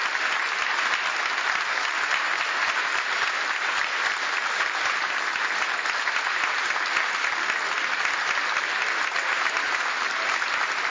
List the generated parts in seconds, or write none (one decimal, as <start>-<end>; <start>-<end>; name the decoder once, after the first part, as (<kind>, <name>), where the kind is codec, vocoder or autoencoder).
none